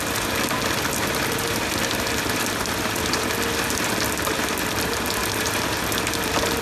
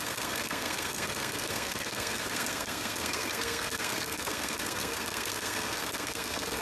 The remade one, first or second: second